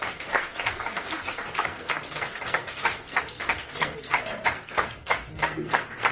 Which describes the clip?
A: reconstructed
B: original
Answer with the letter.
A